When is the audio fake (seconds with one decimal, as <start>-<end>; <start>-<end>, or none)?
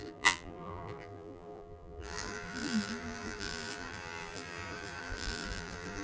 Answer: 0.0-6.0